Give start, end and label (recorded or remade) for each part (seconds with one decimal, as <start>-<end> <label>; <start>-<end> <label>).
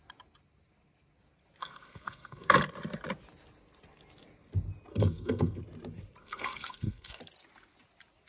0.0-1.6 recorded; 1.6-2.5 remade; 2.5-4.9 recorded; 4.9-5.6 remade; 5.6-6.2 recorded; 6.2-7.2 remade; 7.2-8.3 recorded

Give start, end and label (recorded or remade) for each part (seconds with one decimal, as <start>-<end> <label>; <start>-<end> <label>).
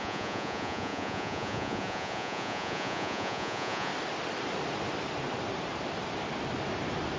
0.0-3.9 remade; 3.9-7.2 recorded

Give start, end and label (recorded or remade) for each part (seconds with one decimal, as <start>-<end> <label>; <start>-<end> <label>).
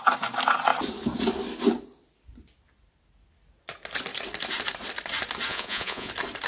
0.0-5.5 recorded; 5.5-6.1 remade; 6.1-6.5 recorded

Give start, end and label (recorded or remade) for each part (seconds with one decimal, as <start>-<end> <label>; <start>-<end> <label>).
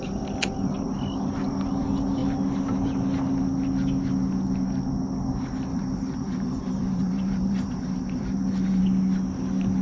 0.0-5.7 recorded; 5.7-8.8 remade; 8.8-9.8 recorded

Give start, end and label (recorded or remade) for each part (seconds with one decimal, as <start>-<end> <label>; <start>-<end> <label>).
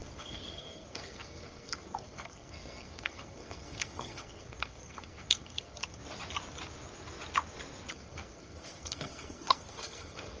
0.0-6.0 remade; 6.0-7.9 recorded; 7.9-10.4 remade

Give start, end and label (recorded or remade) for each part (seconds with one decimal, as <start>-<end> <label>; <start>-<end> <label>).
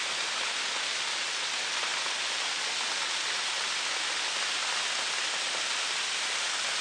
0.0-6.8 recorded